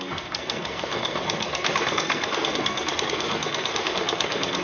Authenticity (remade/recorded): remade